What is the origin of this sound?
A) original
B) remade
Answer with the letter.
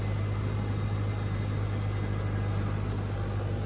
A